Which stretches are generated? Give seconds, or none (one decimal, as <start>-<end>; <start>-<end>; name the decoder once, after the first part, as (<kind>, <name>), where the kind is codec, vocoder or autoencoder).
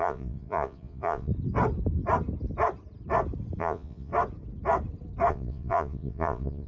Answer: 0.0-1.3 (vocoder, Vocos); 3.6-4.1; 5.3-6.7